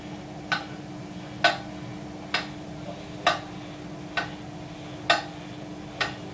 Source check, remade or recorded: recorded